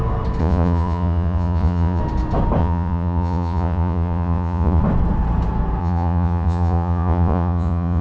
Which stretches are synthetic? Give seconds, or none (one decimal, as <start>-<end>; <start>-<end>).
0.4-2.0; 2.6-4.8; 5.8-8.0